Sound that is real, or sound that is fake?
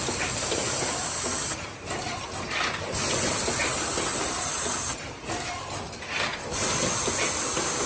real